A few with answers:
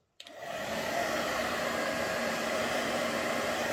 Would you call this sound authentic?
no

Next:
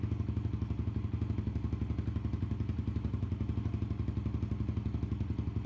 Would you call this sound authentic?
yes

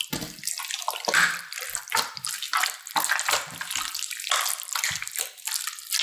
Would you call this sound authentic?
yes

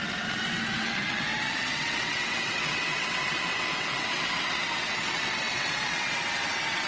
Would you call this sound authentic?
no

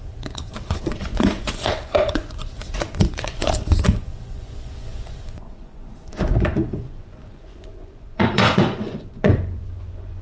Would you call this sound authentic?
no